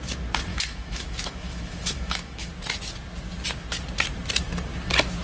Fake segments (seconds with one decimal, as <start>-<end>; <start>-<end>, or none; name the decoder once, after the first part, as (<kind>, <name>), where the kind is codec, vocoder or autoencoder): 0.5-2.5 (autoencoder, DAC-VAE)